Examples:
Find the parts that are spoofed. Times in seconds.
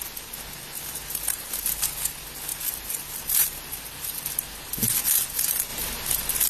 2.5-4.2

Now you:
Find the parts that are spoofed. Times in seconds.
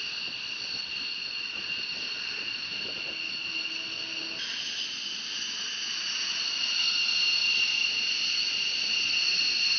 none